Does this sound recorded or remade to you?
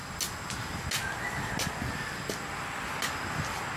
recorded